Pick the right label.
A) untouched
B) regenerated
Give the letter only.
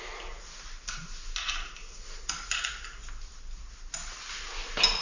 A